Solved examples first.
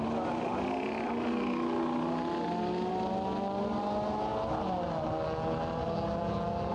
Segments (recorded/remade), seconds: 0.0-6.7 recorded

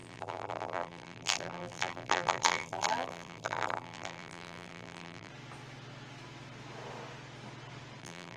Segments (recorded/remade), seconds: 0.0-5.3 remade; 5.3-8.0 recorded; 8.0-8.4 remade

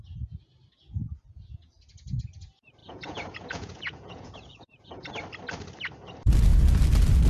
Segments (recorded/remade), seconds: 0.0-2.8 recorded; 2.8-5.1 remade; 5.1-7.3 recorded

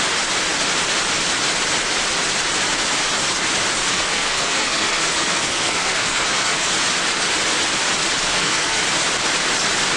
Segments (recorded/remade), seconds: 0.0-3.8 recorded; 3.8-6.7 remade; 6.7-8.2 recorded; 8.2-8.8 remade; 8.8-10.0 recorded

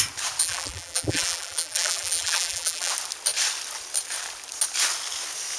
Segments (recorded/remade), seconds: 0.0-0.4 recorded; 0.4-2.9 remade; 2.9-5.6 recorded

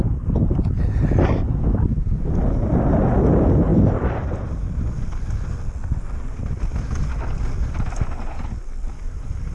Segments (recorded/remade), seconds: 0.0-9.5 recorded

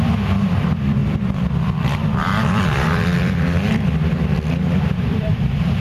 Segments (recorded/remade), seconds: 0.0-5.8 remade